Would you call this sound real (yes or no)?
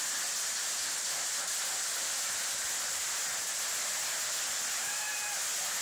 yes